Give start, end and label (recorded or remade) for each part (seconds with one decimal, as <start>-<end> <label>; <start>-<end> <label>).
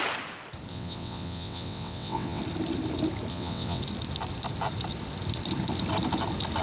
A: 0.0-0.7 recorded; 0.7-2.4 remade; 2.4-3.3 recorded; 3.3-3.8 remade; 3.8-6.6 recorded